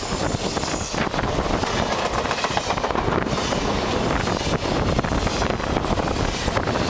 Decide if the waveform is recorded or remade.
recorded